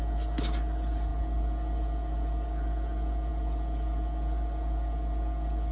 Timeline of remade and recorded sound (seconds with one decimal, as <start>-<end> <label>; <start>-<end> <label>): 0.0-5.7 recorded